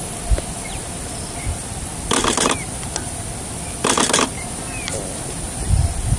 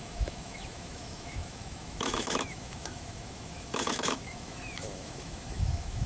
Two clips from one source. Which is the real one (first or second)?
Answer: first